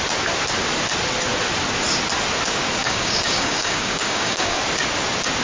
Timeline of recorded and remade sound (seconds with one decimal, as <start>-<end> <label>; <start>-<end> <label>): 0.0-2.8 recorded; 2.8-4.6 remade; 4.6-5.4 recorded